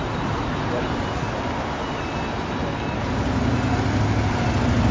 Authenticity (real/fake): real